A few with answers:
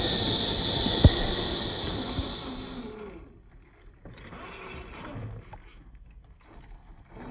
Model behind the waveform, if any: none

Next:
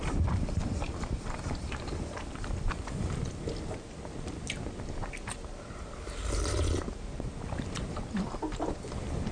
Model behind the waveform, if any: none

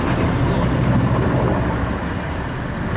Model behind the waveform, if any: none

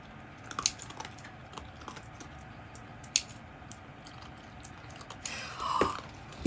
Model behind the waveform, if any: none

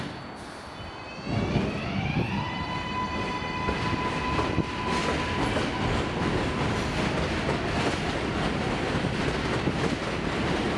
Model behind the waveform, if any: none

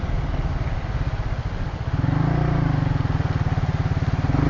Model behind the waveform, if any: none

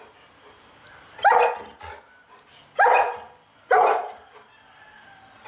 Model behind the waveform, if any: none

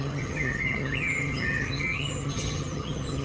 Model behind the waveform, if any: vocoder, HiFi-GAN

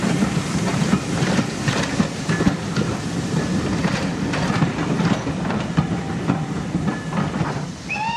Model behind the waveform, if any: vocoder, BigVGAN v2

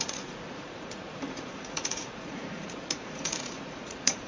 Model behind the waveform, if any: vocoder, Vocos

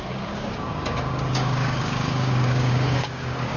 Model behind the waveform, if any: codec, DAC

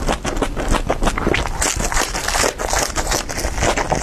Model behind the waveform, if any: none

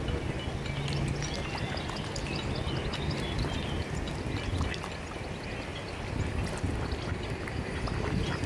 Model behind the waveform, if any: none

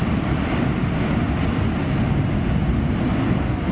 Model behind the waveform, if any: none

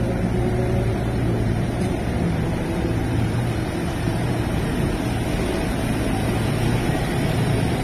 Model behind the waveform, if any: vocoder, BigVGAN v2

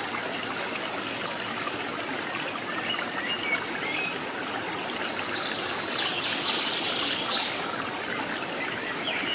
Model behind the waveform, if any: none